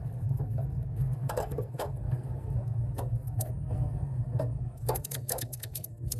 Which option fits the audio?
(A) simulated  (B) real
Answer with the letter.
A